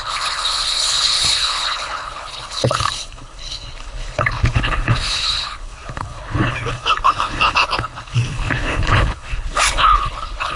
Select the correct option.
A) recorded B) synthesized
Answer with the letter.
B